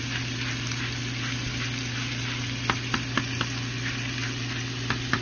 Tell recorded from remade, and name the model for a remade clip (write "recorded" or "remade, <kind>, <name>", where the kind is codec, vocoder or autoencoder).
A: recorded